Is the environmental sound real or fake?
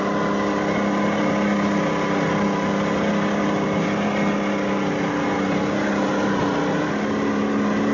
real